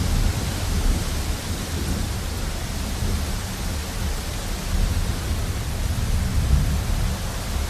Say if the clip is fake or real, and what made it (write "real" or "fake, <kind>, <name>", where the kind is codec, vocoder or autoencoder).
real